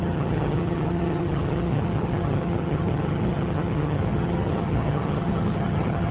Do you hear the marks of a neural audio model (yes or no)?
yes